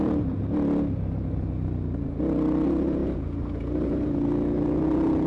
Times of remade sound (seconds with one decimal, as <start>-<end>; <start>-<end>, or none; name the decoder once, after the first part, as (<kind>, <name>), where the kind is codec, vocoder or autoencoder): none